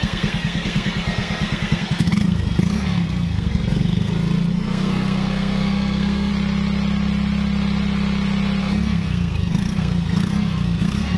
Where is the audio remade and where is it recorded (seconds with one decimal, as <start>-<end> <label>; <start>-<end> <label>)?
0.0-6.3 remade; 6.3-8.6 recorded; 8.6-11.2 remade